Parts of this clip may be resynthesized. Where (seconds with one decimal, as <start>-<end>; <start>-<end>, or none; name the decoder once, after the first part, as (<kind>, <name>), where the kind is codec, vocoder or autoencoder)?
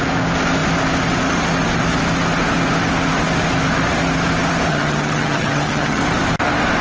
4.7-6.0 (vocoder, HiFi-GAN)